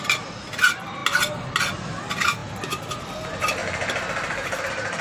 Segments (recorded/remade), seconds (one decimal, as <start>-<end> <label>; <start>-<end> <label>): 0.0-1.0 remade; 1.0-1.6 recorded; 1.6-3.6 remade; 3.6-4.6 recorded; 4.6-5.0 remade